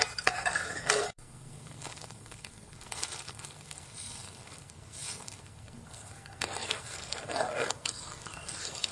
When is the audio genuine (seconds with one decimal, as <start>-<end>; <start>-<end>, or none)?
none